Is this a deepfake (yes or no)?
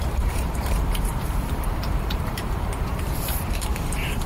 yes